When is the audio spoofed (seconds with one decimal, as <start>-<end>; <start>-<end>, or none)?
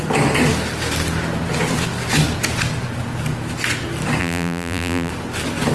4.2-5.1